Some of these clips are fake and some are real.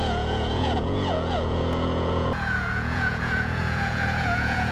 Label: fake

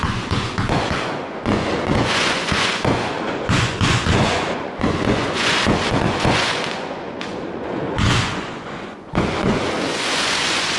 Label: fake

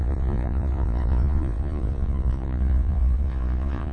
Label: fake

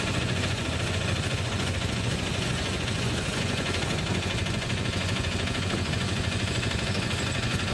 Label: fake